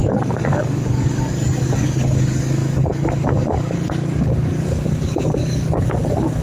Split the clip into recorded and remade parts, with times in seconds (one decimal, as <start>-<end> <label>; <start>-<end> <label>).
0.0-6.4 remade